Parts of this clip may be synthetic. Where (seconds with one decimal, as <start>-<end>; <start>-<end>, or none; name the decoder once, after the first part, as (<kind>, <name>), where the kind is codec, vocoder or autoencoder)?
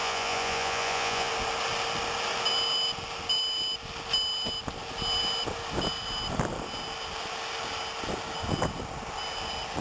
0.0-1.3 (vocoder, Vocos)